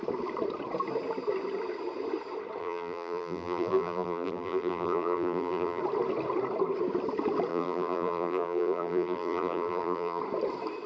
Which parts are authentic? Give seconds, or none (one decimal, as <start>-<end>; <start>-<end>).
0.0-2.6; 5.8-7.5; 10.2-10.9

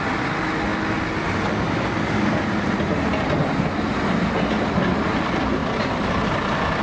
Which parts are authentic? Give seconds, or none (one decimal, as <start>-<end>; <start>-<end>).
0.0-5.6

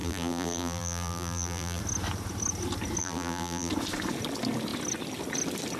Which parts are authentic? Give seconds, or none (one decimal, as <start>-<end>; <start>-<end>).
1.8-3.0; 3.7-5.8

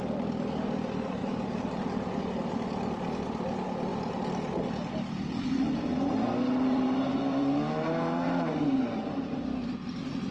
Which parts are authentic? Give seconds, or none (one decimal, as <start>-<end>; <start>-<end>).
0.0-1.2; 2.2-5.9; 9.4-10.3

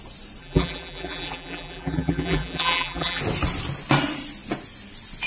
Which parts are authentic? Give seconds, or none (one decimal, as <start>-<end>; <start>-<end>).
0.0-0.4; 3.2-5.3

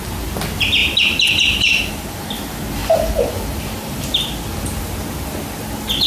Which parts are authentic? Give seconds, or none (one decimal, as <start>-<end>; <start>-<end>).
0.0-0.8; 1.9-2.8; 4.8-6.1

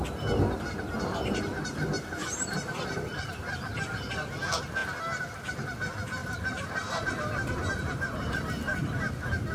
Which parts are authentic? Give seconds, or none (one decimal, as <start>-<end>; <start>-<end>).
0.0-2.2; 3.9-6.2; 9.1-9.5

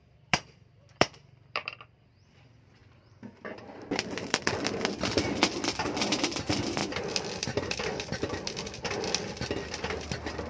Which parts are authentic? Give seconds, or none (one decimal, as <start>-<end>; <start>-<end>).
2.8-3.6; 6.8-7.4